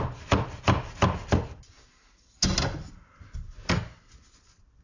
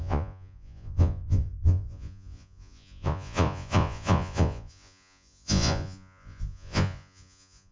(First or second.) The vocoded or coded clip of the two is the second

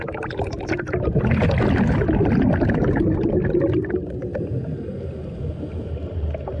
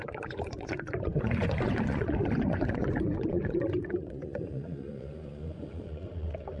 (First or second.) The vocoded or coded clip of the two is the second